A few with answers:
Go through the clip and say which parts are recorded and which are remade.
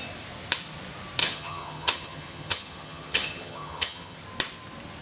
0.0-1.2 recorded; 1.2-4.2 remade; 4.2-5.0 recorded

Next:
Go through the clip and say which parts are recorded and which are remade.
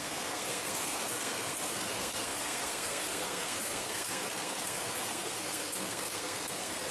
0.0-6.9 remade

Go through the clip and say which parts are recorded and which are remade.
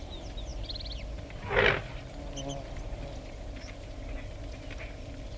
0.0-5.4 recorded